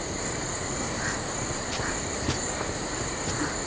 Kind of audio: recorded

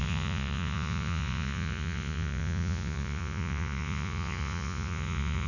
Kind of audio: remade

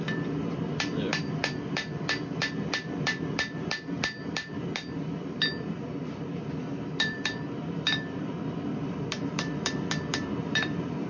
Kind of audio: remade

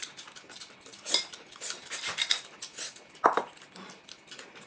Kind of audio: recorded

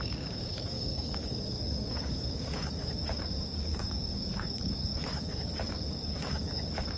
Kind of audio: remade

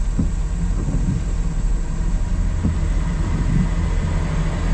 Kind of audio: recorded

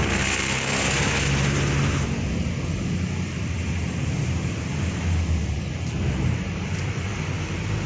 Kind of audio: recorded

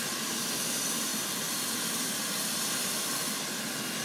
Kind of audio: recorded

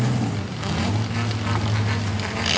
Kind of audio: recorded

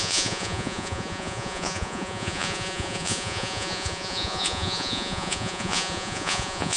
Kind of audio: remade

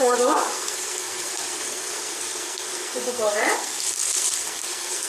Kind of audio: remade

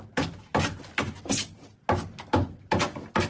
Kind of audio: recorded